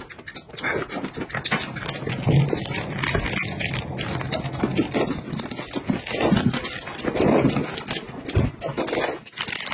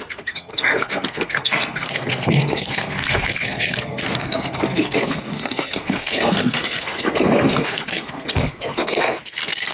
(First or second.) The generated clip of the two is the second